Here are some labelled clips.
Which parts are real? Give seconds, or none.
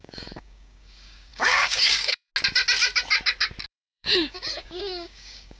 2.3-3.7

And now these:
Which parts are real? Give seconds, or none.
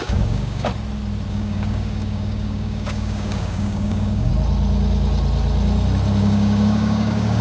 0.7-1.3; 4.3-6.2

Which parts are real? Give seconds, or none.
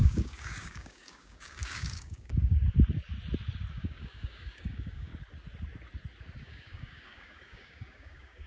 2.5-3.7; 5.1-6.4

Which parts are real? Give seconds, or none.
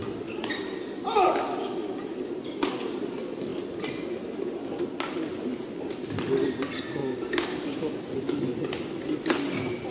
0.0-7.0; 8.0-9.9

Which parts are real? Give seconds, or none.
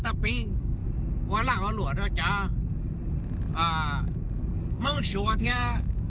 0.8-4.5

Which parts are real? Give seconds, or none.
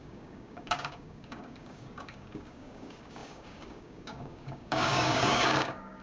none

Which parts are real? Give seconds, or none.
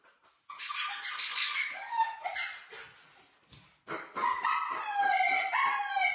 0.0-1.3; 2.0-6.1